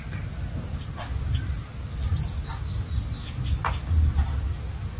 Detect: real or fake real